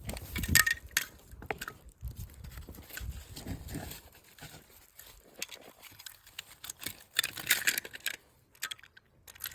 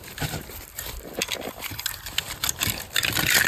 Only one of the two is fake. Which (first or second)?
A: second